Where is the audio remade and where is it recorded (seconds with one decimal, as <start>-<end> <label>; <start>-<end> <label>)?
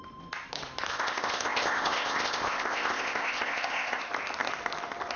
0.0-0.9 recorded; 0.9-4.0 remade; 4.0-5.2 recorded